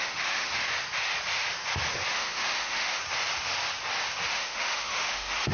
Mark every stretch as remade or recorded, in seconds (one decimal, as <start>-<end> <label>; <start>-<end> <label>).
0.0-0.7 remade; 0.7-2.1 recorded; 2.1-3.0 remade; 3.0-4.3 recorded; 4.3-5.5 remade